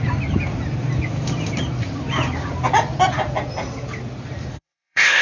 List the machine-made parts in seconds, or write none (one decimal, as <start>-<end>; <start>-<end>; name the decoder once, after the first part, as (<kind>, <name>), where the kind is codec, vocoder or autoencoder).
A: 4.5-5.2 (codec, ZipCodec)